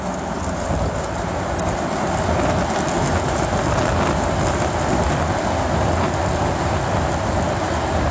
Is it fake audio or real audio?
real